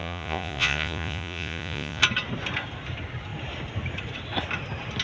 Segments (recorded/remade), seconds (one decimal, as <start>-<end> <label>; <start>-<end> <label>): 0.0-2.0 remade; 2.0-5.0 recorded